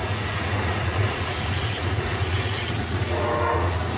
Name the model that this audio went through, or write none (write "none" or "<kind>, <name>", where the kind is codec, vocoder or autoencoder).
vocoder, Vocos